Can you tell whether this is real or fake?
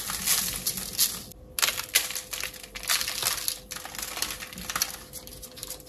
real